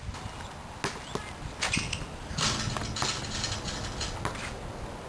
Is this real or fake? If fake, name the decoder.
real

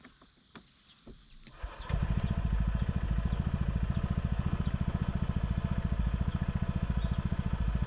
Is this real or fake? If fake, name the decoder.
real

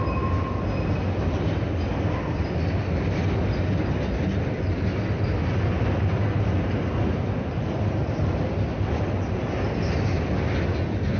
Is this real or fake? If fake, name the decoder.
real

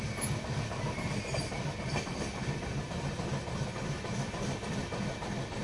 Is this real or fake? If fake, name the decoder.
real